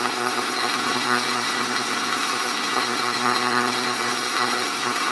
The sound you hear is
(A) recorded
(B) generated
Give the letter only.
B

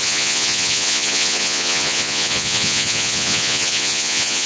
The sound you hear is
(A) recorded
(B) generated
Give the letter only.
B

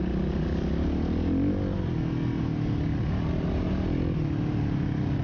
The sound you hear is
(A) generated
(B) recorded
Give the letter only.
B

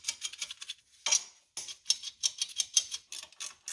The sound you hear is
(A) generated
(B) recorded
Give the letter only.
B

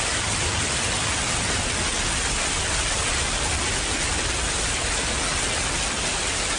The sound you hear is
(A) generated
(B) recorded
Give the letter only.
B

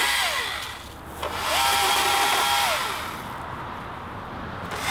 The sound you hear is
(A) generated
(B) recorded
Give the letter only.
B